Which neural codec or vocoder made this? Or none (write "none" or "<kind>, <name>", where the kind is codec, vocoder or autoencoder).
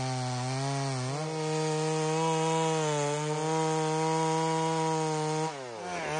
none